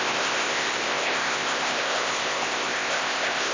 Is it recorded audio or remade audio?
remade